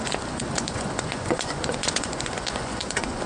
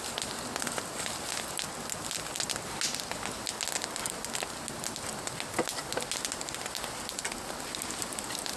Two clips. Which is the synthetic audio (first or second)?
first